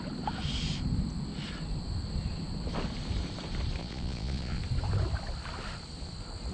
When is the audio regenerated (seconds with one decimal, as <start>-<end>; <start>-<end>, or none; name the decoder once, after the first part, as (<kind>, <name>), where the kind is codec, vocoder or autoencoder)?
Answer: 3.8-4.6 (vocoder, Vocos)